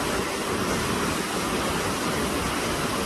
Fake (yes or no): no